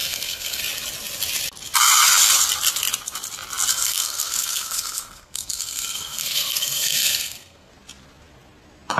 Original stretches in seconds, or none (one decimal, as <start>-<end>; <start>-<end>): 0.6-3.7; 7.7-9.0